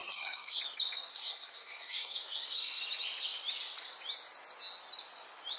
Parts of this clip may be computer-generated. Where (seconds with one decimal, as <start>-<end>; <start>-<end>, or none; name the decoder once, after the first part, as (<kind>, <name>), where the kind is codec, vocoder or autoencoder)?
0.0-0.6 (codec, SNAC); 1.1-2.8